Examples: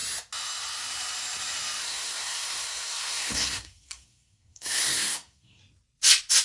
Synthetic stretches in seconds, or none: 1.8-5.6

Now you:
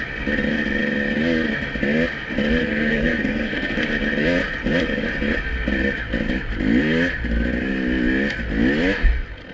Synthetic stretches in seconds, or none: 2.6-3.8

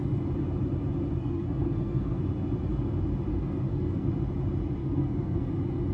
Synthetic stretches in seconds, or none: 1.2-2.2; 3.3-4.1; 4.8-5.5

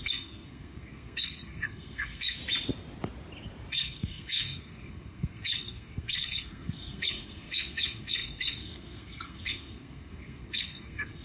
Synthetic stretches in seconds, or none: 0.0-2.4; 3.7-11.2